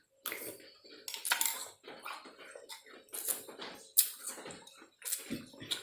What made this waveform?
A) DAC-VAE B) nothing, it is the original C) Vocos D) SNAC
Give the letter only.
B